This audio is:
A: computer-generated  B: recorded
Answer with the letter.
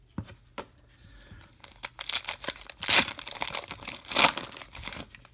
B